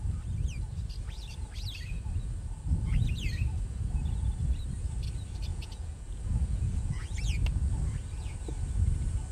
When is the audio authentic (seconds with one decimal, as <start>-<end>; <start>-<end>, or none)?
0.0-5.5; 7.2-9.3